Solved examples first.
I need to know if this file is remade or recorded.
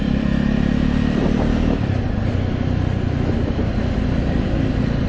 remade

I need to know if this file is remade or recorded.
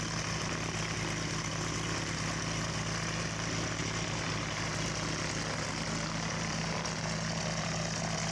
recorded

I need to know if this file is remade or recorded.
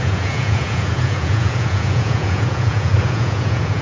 remade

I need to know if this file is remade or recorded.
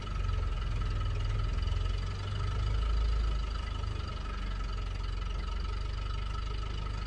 recorded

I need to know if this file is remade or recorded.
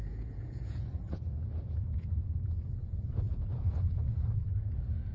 remade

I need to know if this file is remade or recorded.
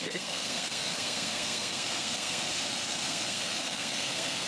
remade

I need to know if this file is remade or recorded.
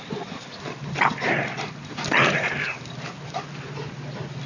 recorded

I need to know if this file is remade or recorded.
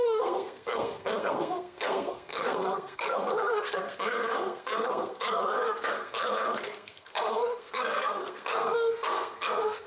remade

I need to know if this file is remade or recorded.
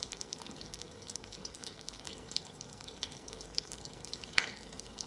remade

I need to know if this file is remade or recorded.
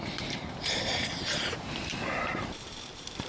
remade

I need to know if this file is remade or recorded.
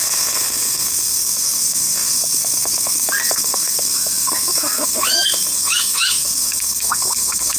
remade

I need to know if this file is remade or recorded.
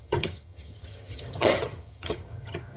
remade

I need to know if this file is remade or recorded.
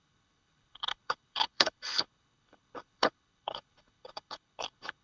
remade